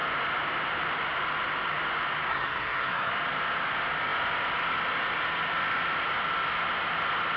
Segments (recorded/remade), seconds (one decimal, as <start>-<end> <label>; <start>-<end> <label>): 0.0-2.3 recorded; 2.3-3.1 remade; 3.1-7.4 recorded